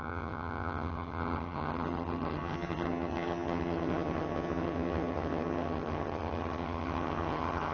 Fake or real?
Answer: fake